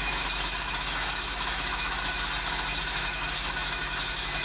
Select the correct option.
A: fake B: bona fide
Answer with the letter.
A